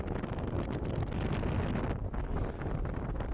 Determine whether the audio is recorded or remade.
recorded